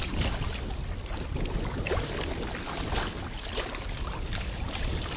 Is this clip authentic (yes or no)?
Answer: yes